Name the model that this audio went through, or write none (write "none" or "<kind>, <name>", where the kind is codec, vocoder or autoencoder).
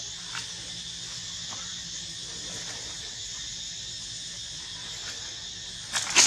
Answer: none